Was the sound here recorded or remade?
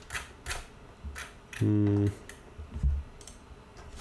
recorded